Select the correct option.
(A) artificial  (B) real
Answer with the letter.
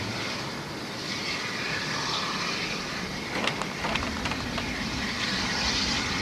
B